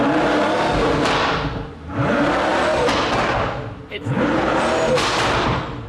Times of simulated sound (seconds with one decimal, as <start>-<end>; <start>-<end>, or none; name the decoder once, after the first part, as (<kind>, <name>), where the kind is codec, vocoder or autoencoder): 3.9-4.6 (codec, HILCodec)